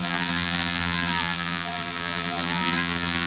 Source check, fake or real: fake